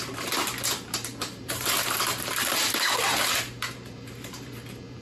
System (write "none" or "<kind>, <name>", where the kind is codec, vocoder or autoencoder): vocoder, BigVGAN v2